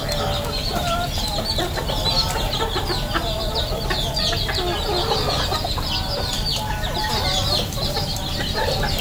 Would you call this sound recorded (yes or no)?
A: yes